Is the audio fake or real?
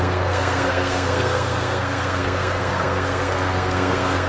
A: fake